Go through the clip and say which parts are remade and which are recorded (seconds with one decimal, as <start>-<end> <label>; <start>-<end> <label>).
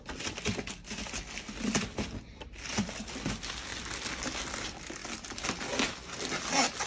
0.0-6.9 recorded